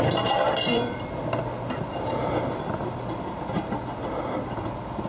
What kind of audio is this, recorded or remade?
recorded